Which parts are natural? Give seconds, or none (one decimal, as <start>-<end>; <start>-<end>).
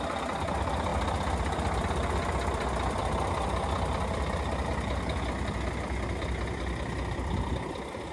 0.0-8.1